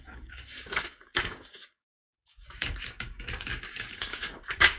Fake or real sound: fake